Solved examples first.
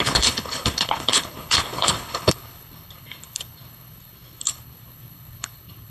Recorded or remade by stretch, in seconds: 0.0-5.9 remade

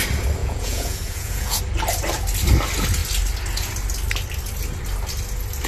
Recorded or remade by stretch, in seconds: 0.0-0.4 recorded; 0.4-1.6 remade; 1.6-5.7 recorded

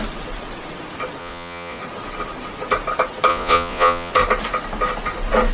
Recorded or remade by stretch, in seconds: 0.0-1.2 recorded; 1.2-1.8 remade; 1.8-3.3 recorded; 3.3-4.1 remade; 4.1-5.5 recorded

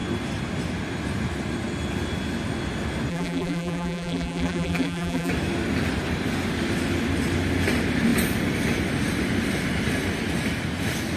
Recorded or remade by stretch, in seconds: 0.0-3.1 recorded; 3.1-5.3 remade; 5.3-11.2 recorded

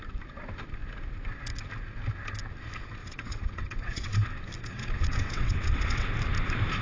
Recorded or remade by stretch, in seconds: 0.0-3.0 recorded; 3.0-4.3 remade; 4.3-4.8 recorded; 4.8-6.1 remade; 6.1-6.8 recorded